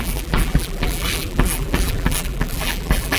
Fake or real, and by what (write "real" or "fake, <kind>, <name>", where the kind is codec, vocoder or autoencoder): fake, vocoder, BigVGAN v2